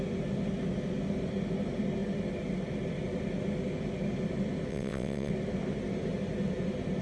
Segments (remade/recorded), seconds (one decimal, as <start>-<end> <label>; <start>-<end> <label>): 0.0-4.7 recorded; 4.7-5.3 remade; 5.3-7.0 recorded

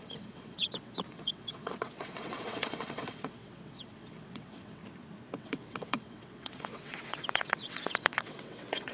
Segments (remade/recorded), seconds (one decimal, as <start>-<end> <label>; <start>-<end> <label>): 0.0-4.8 remade; 4.8-5.4 recorded; 5.4-8.9 remade

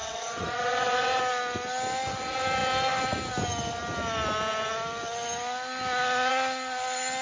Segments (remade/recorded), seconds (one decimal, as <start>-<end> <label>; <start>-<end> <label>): 0.0-1.2 remade; 1.2-7.2 recorded

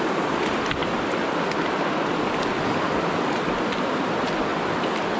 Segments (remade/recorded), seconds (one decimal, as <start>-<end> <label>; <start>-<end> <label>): 0.0-5.2 recorded

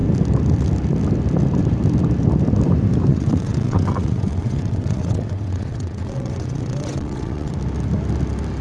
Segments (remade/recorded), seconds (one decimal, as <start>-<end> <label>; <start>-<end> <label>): 0.0-3.1 recorded; 3.1-7.5 remade; 7.5-8.6 recorded

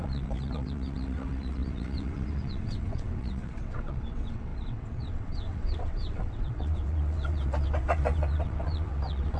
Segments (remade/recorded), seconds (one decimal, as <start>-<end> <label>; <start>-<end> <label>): 0.0-9.4 remade